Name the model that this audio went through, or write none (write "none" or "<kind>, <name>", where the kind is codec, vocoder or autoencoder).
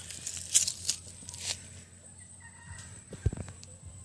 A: none